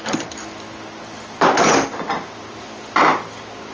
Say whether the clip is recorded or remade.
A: recorded